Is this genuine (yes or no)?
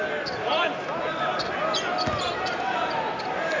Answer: yes